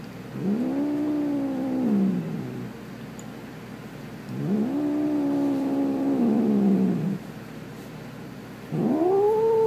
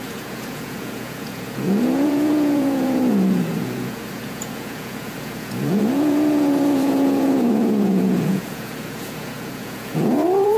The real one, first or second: first